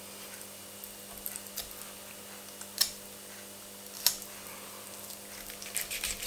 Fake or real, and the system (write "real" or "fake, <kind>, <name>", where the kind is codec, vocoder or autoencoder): real